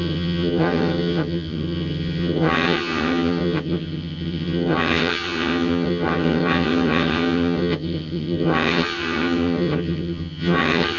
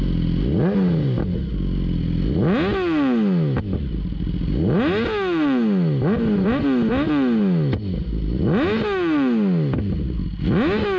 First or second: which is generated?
first